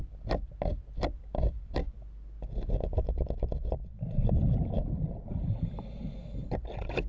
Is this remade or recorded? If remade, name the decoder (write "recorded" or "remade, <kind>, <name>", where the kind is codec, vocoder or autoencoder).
recorded